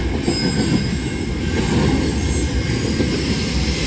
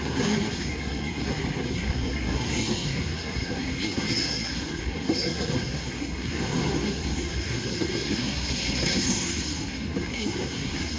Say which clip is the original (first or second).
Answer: first